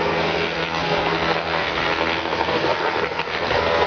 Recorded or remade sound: remade